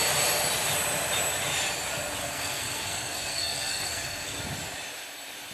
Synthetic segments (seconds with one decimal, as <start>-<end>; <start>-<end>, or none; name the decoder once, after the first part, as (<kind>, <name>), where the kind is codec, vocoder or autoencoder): 2.2-4.4 (codec, SNAC)